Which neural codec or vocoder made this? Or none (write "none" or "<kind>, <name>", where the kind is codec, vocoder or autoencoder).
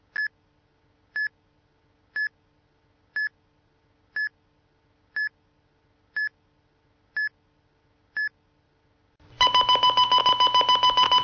none